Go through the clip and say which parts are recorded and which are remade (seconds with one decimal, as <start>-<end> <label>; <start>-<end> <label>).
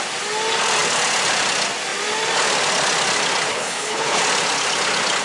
0.0-3.5 recorded; 3.5-4.2 remade; 4.2-5.2 recorded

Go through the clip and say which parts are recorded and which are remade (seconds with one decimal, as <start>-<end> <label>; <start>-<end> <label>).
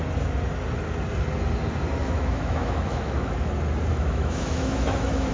0.0-2.0 recorded; 2.0-3.5 remade; 3.5-3.9 recorded; 3.9-5.3 remade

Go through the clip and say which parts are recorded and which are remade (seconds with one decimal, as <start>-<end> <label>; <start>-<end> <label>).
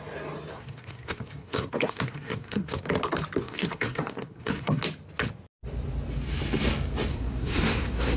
0.0-0.5 recorded; 0.5-2.8 remade; 2.8-3.4 recorded; 3.4-4.8 remade; 4.8-7.1 recorded; 7.1-8.2 remade